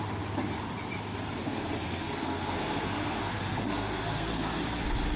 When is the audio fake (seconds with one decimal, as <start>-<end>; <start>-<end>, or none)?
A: 1.4-4.5